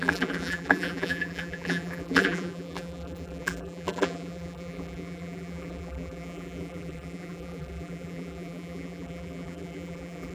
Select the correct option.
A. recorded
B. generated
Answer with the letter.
B